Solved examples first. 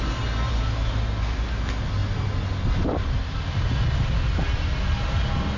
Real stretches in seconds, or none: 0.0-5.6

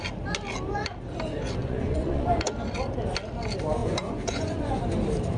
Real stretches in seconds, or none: 0.0-1.6; 2.5-3.8; 4.8-5.4

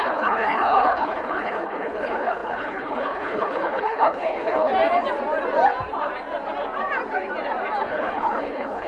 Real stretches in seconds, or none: 4.7-7.9